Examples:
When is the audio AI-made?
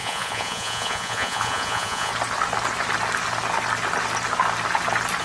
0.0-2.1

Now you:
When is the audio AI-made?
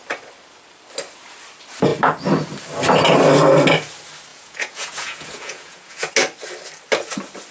4.3-6.1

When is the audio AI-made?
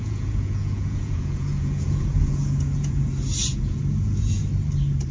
0.0-3.1; 3.5-4.4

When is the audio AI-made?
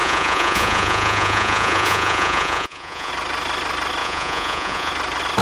0.0-3.1; 4.0-4.9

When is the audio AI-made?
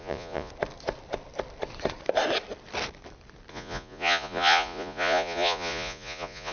0.0-0.5; 3.5-6.5